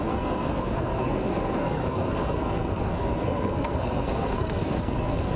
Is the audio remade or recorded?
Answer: remade